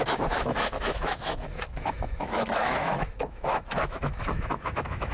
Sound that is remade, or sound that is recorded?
remade